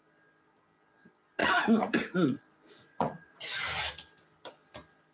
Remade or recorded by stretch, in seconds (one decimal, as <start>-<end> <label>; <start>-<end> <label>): 0.0-1.4 recorded; 1.4-2.4 remade; 2.4-2.8 recorded; 2.8-3.4 remade; 3.4-5.1 recorded